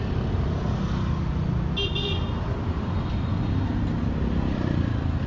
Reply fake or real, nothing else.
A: real